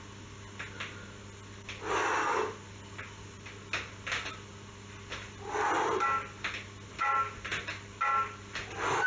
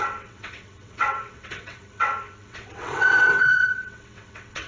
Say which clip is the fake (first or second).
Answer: second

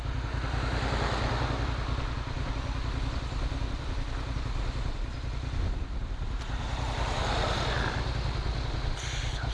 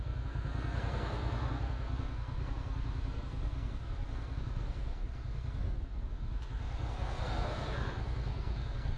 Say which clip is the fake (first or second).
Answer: second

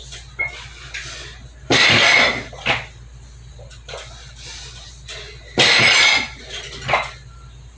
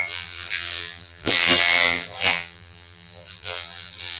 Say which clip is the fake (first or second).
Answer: second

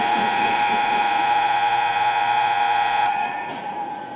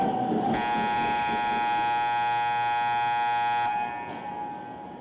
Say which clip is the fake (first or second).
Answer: first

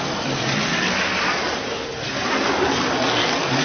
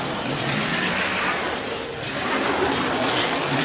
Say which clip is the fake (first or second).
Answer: second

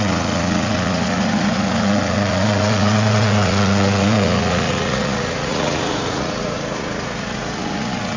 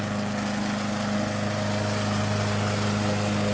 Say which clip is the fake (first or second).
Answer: first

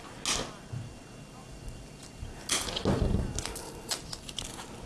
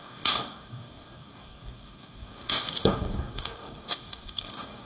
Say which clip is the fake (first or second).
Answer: second